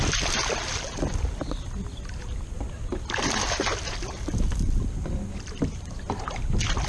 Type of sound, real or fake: real